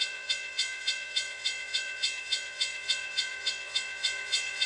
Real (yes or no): no